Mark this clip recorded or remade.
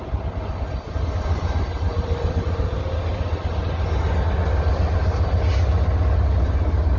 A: recorded